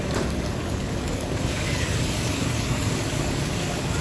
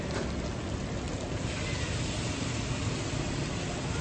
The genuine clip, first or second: second